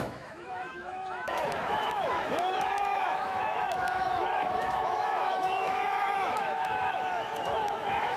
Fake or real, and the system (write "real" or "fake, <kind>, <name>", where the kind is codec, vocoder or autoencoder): fake, autoencoder, DAC-VAE